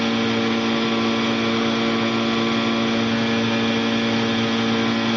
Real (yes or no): yes